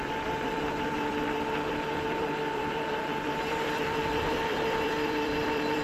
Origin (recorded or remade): remade